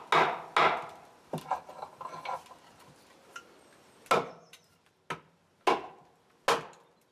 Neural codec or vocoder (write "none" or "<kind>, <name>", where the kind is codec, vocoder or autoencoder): none